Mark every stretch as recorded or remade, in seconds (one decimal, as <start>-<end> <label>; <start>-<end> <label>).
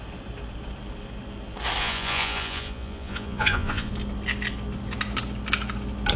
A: 0.0-1.8 recorded; 1.8-3.9 remade; 3.9-6.2 recorded